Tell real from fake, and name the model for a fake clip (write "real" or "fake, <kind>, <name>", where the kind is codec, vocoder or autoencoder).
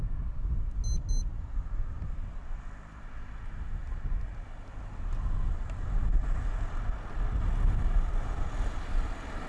real